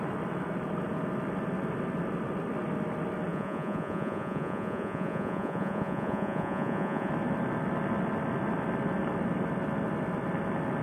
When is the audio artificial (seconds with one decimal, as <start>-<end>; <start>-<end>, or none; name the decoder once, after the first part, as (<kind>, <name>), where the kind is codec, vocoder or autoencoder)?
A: 3.3-7.1 (vocoder, Vocos)